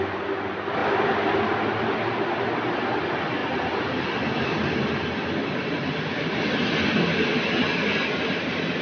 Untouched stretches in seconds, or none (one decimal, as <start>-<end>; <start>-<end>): 0.0-8.8